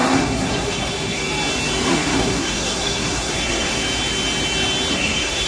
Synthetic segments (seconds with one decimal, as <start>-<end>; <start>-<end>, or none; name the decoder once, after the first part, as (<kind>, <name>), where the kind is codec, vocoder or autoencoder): 0.0-1.2 (codec, SNAC); 1.9-3.8; 4.9-5.5